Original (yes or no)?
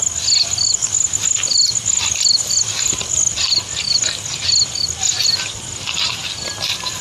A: yes